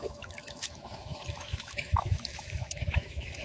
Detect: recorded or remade remade